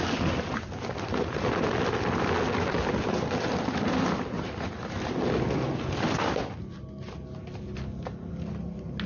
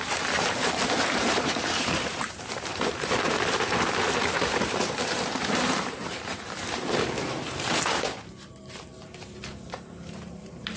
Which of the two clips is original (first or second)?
first